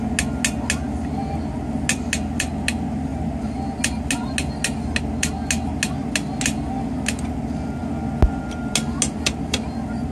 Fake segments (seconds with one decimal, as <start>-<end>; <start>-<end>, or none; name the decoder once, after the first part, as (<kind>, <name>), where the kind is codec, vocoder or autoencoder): none